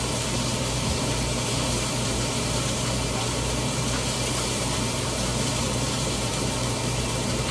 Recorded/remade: remade